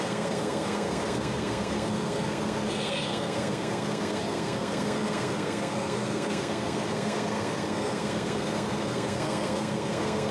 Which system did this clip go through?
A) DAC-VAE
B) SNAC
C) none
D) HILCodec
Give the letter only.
B